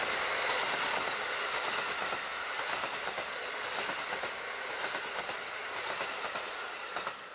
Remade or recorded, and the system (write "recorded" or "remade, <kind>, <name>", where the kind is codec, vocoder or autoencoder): recorded